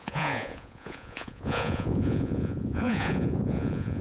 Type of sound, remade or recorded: remade